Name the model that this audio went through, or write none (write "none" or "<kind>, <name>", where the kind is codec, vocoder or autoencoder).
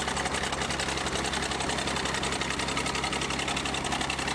none